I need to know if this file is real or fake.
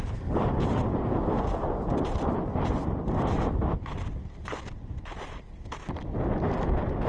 real